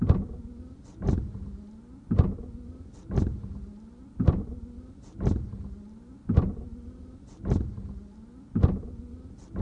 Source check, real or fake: real